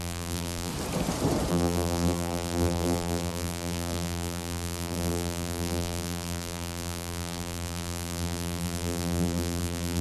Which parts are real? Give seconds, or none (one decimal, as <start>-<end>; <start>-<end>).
0.7-1.5